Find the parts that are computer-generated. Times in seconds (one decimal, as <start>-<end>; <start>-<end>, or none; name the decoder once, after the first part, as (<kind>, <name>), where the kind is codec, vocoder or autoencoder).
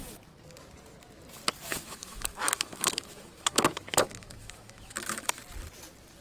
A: 1.7-5.3 (autoencoder, DAC-VAE)